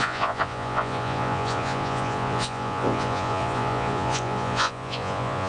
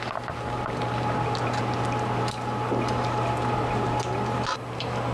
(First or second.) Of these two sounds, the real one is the second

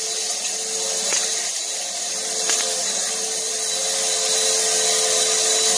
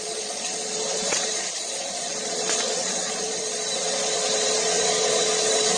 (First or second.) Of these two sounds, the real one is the first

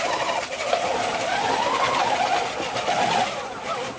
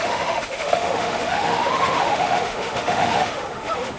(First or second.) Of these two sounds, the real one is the first